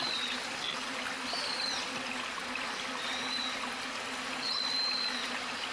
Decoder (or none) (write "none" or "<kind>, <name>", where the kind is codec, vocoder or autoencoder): none